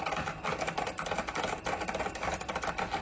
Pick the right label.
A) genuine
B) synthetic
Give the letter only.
A